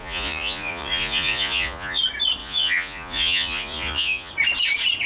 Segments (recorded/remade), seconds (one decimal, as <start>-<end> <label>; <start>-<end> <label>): 0.0-2.0 remade; 2.0-2.4 recorded; 2.4-4.3 remade; 4.3-5.1 recorded